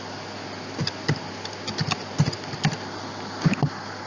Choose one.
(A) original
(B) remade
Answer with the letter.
A